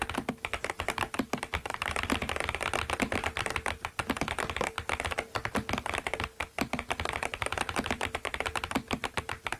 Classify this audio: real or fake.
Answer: real